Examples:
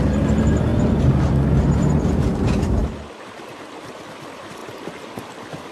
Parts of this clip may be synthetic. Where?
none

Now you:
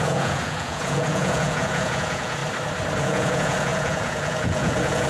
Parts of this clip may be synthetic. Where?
0.0-2.4 (vocoder, Vocos); 3.0-5.1